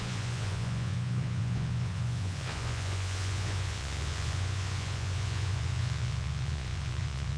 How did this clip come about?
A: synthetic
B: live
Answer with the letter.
A